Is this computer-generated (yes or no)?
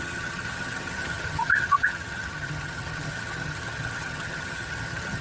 yes